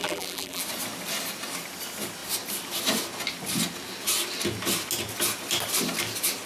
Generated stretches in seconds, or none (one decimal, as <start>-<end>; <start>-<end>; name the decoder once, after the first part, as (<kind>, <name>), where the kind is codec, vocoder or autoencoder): 0.0-0.6 (vocoder, BigVGAN v2)